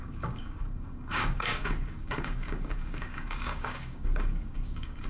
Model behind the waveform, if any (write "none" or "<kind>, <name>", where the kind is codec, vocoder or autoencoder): codec, DAC